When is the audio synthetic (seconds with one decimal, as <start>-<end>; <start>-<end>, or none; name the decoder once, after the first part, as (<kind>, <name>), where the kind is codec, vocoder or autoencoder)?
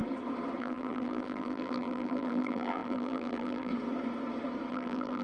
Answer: 0.6-3.7 (vocoder, BigVGAN v2); 4.7-5.2